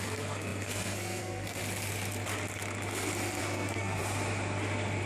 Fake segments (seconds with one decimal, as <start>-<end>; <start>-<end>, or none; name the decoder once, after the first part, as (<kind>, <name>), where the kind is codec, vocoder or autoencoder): 0.0-1.6 (codec, SNAC); 3.4-4.0